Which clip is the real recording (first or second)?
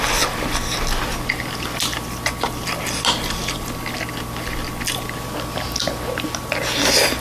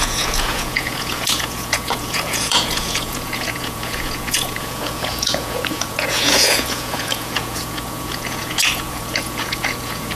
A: first